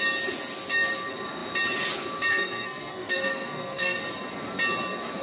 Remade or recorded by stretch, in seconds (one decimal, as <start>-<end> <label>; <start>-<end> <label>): 0.0-2.3 recorded; 2.3-4.0 remade; 4.0-5.2 recorded